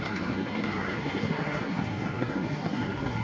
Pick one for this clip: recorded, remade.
remade